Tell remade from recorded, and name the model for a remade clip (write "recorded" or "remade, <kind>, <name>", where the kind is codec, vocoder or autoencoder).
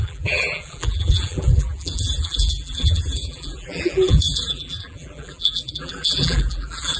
remade, vocoder, BigVGAN v2